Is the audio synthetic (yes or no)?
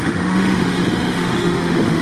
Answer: yes